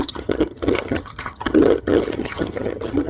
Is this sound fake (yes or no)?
yes